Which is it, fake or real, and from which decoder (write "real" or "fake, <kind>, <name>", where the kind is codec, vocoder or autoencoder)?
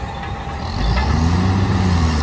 real